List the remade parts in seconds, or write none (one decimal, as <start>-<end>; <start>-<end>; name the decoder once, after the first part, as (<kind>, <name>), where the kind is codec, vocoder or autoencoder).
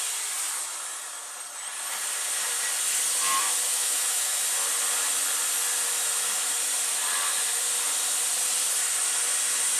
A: 3.7-4.4 (autoencoder, DAC-VAE)